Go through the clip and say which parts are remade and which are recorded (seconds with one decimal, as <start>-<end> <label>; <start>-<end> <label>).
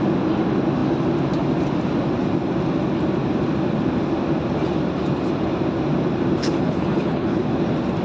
0.0-6.4 recorded; 6.4-7.4 remade; 7.4-8.0 recorded